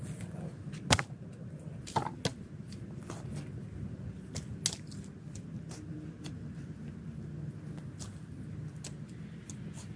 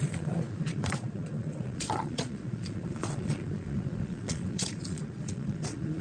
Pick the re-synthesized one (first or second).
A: second